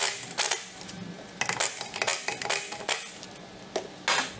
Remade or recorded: recorded